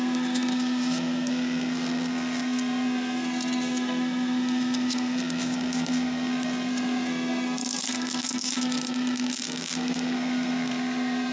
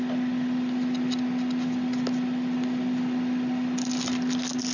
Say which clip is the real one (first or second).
second